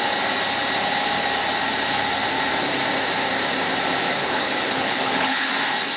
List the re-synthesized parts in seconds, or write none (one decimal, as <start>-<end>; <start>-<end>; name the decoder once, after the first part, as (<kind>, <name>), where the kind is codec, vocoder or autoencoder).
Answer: 4.2-5.5 (codec, HILCodec)